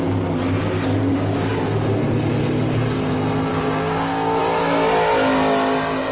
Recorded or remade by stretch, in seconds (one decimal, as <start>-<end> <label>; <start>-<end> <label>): 0.0-1.1 recorded; 1.1-1.6 remade; 1.6-3.5 recorded; 3.5-4.4 remade; 4.4-6.1 recorded

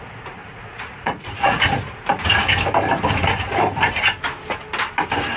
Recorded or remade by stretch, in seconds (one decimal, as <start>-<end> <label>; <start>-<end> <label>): 0.0-0.4 recorded; 0.4-1.6 remade; 1.6-5.4 recorded

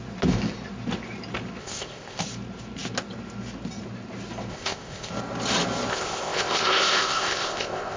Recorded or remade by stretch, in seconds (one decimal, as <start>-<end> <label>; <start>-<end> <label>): 0.0-1.6 recorded; 1.6-2.2 remade; 2.2-4.5 recorded; 4.5-5.1 remade; 5.1-5.9 recorded; 5.9-8.0 remade

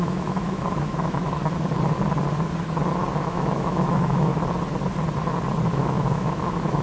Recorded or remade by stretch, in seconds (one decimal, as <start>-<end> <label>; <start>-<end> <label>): 0.0-1.4 remade; 1.4-3.2 recorded; 3.2-4.3 remade; 4.3-5.7 recorded; 5.7-6.8 remade